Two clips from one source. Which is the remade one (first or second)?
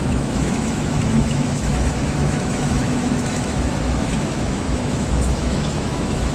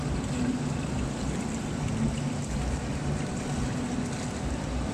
first